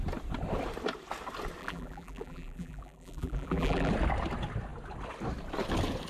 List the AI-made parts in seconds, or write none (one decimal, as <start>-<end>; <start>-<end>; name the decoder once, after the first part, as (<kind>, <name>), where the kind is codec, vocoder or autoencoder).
1.6-3.9 (vocoder, BigVGAN v2)